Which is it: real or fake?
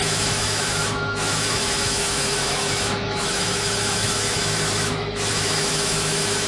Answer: fake